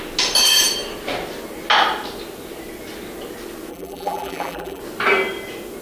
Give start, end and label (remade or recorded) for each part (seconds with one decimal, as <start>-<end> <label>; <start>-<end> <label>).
0.0-3.7 recorded; 3.7-4.8 remade; 4.8-5.8 recorded